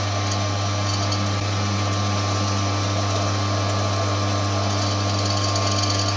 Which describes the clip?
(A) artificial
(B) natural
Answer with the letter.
B